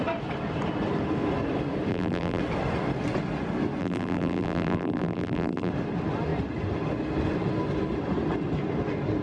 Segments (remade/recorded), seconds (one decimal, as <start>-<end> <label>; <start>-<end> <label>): 0.0-1.9 recorded; 1.9-2.4 remade; 2.4-3.8 recorded; 3.8-5.7 remade; 5.7-9.2 recorded